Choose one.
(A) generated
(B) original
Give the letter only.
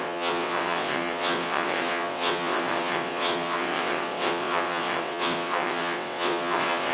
A